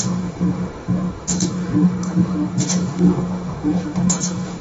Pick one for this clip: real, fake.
fake